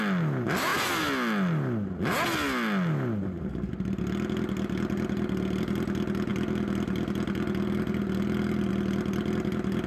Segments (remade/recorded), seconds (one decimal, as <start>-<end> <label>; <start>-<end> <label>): 0.0-9.9 recorded